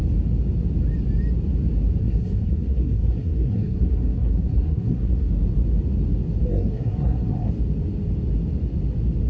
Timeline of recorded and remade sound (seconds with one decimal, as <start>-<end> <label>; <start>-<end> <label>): 0.0-2.0 recorded; 2.0-5.3 remade; 5.3-6.5 recorded; 6.5-7.5 remade; 7.5-9.3 recorded